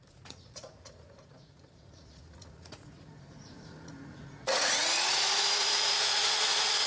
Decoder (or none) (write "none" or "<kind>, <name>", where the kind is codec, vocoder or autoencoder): vocoder, Vocos